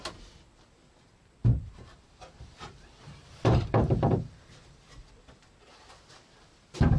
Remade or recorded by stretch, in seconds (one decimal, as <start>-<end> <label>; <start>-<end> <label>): 0.0-1.4 recorded; 1.4-4.9 remade; 4.9-7.0 recorded